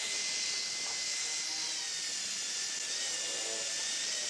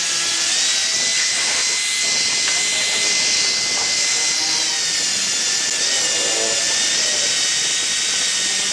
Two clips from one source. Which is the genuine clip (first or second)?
second